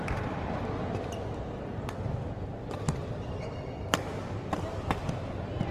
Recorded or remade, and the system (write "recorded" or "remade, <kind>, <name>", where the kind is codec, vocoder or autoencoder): remade, vocoder, BigVGAN v2